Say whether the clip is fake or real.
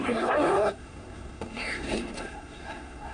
fake